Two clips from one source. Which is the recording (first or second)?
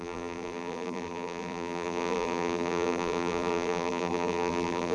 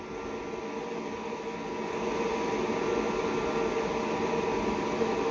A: second